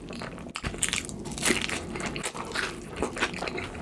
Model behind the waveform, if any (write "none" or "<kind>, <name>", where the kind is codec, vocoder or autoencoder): none